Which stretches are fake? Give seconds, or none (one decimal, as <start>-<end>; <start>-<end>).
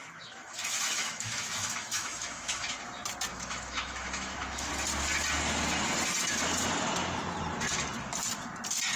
0.0-2.8; 3.3-4.7